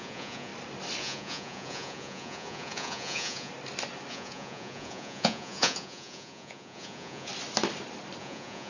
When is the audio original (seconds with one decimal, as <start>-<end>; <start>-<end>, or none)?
0.5-1.0; 3.5-4.1; 7.3-8.2